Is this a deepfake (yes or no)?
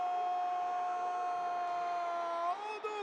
no